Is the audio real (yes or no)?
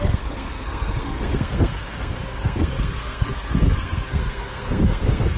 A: no